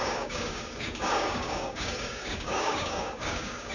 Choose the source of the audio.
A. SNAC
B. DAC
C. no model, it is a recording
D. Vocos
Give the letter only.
B